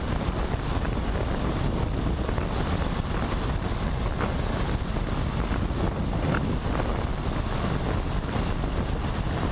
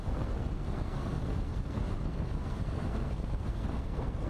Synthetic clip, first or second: second